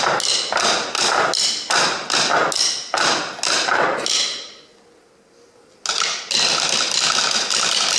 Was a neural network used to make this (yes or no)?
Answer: no